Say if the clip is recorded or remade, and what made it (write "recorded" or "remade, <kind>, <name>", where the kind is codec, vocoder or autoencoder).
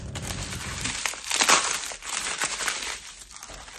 remade, vocoder, BigVGAN v2